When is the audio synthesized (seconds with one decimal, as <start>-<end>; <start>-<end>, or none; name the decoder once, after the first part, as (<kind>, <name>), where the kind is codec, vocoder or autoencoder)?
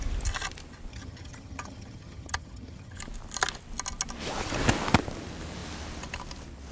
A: 0.9-3.0 (vocoder, HiFi-GAN)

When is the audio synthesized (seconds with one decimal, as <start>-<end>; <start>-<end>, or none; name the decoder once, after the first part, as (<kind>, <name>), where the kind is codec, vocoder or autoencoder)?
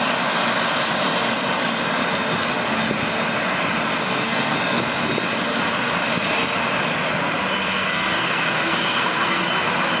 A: 4.0-4.8 (codec, SNAC); 7.6-9.5